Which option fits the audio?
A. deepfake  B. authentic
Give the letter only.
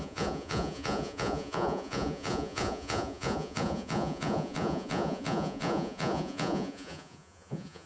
A